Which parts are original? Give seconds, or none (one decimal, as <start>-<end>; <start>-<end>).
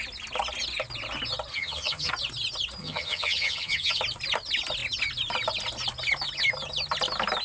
0.0-1.5; 2.1-2.8; 4.0-7.4